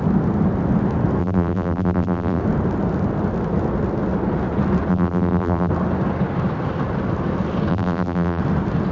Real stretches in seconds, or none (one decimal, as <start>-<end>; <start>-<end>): 0.0-1.2; 2.4-4.9; 5.7-7.7; 8.4-8.9